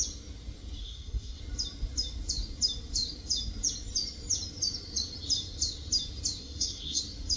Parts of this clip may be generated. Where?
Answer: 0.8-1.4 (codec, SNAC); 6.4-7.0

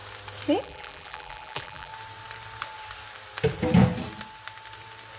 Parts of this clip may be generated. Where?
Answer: 0.6-1.9 (vocoder, BigVGAN v2)